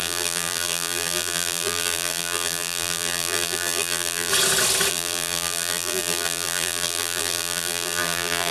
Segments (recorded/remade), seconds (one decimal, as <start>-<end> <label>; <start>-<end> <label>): 0.0-4.3 remade; 4.3-4.9 recorded; 4.9-8.5 remade